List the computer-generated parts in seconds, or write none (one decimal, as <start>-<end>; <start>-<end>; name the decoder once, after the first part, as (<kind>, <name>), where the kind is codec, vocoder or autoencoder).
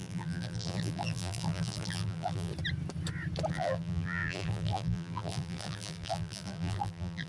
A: 0.0-2.5 (vocoder, BigVGAN v2); 3.5-7.3